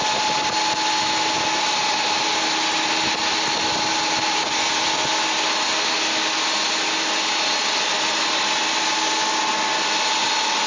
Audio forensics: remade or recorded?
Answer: recorded